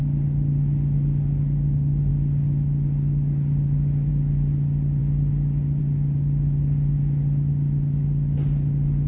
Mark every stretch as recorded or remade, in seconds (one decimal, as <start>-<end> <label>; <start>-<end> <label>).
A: 0.0-9.1 recorded